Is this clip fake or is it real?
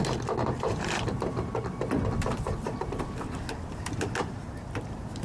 real